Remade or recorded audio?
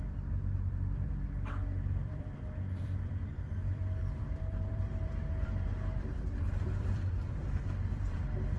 remade